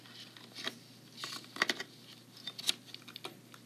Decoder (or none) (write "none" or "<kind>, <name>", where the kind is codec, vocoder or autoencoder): none